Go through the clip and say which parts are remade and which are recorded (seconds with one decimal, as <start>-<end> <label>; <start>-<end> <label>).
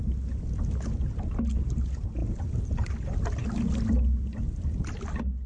0.0-2.2 recorded; 2.2-2.9 remade; 2.9-5.5 recorded